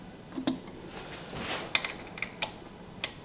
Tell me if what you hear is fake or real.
real